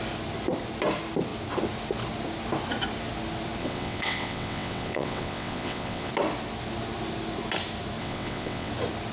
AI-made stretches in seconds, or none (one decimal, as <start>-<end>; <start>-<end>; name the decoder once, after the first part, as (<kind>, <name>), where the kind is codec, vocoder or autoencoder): 3.6-6.1 (vocoder, WaveNeXt); 8.0-8.7